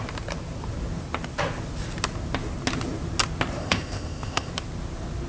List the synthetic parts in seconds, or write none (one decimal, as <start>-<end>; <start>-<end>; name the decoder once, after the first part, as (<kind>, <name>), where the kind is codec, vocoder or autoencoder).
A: 3.6-4.5 (codec, ZipCodec)